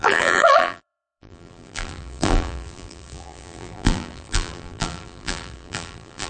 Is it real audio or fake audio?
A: fake